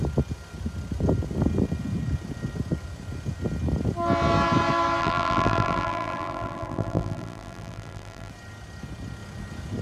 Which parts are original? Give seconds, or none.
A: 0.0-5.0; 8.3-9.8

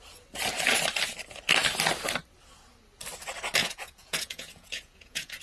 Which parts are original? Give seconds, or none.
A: 0.0-3.6

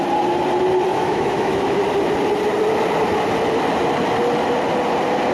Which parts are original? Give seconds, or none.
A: 0.0-0.9; 1.8-5.3